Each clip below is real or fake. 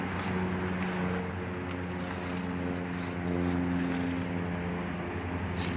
real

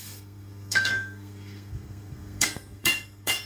fake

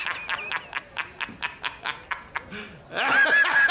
real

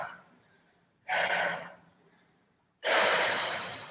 fake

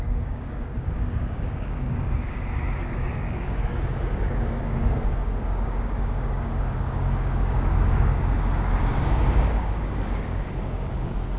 fake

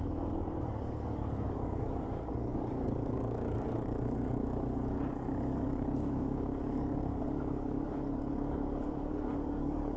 fake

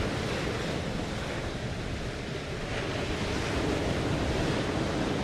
fake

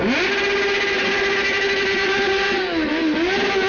real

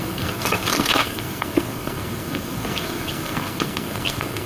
fake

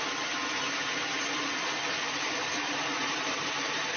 real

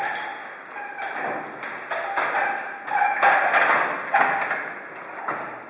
real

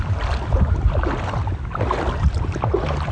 real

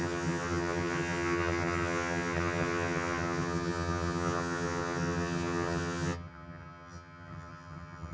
fake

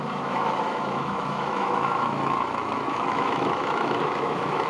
fake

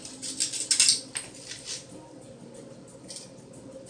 real